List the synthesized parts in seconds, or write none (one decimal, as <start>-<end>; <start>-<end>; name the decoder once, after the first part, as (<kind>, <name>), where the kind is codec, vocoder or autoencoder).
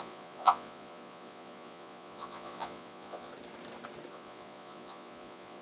0.0-3.3 (vocoder, Vocos); 4.1-5.6